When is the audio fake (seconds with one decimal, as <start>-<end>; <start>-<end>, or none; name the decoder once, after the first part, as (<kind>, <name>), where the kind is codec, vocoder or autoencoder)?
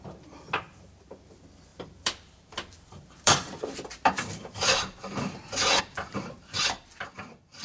1.7-5.8 (vocoder, BigVGAN v2)